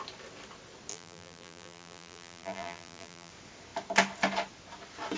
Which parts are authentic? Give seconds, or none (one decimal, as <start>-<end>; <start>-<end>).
0.0-0.9; 3.3-5.2